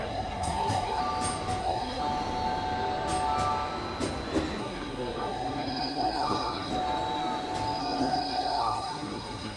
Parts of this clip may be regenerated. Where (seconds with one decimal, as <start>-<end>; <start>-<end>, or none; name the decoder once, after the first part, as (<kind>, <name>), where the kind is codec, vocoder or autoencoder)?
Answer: 0.0-1.0 (codec, SNAC); 1.6-2.0; 4.6-6.7; 7.8-9.6

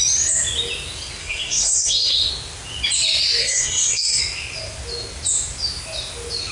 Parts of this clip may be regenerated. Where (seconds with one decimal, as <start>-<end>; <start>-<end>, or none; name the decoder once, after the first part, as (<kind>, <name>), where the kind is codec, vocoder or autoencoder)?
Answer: 1.2-2.3 (codec, SNAC); 3.4-4.2

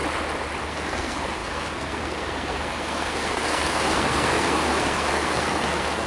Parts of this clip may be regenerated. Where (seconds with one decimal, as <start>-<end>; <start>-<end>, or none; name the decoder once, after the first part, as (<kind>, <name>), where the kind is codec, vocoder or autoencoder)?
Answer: 0.6-6.1 (codec, SNAC)

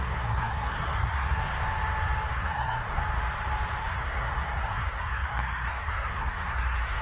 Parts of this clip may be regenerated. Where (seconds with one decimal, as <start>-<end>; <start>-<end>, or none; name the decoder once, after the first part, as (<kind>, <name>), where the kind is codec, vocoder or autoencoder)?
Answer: 0.0-1.4 (codec, SNAC); 2.3-3.0; 3.8-7.0

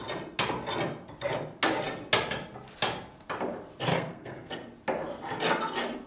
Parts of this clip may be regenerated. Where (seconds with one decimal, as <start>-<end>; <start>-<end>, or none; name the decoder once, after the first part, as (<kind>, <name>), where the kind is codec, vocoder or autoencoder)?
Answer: 3.9-4.5 (codec, SNAC)

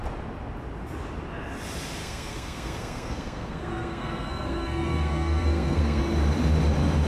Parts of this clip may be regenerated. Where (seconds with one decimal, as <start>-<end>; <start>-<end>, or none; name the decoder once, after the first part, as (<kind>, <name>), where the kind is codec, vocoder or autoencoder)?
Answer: 2.0-6.0 (codec, SNAC)

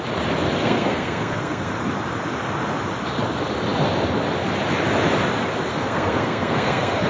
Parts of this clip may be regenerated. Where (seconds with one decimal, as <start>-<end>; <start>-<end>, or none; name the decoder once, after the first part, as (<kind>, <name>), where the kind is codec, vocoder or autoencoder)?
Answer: 0.6-1.7 (codec, SNAC); 5.7-7.1